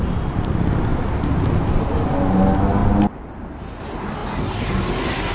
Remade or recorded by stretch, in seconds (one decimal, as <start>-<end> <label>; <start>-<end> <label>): 0.0-5.3 recorded

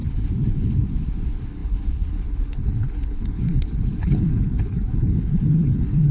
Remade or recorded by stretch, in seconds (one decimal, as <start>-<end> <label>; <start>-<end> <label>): 0.0-6.1 remade